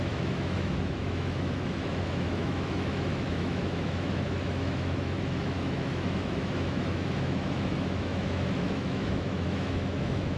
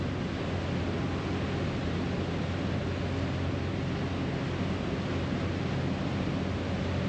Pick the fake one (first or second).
first